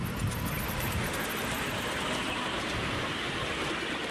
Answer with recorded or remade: recorded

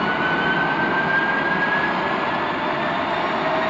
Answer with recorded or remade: recorded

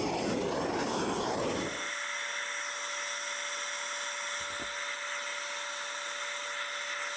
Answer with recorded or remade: recorded